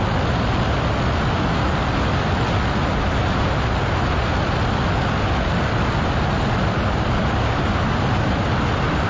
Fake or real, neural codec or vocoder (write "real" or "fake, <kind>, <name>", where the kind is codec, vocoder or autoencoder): real